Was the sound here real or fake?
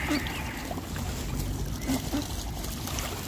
real